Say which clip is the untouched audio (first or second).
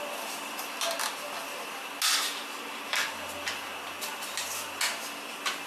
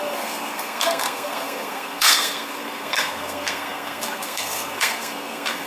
first